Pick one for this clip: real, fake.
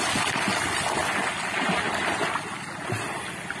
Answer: real